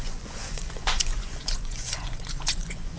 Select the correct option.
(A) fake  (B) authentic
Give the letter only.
A